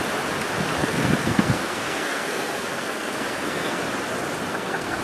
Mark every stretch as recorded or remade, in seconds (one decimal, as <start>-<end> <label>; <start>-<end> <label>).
0.0-0.8 recorded; 0.8-3.8 remade; 3.8-4.5 recorded; 4.5-5.0 remade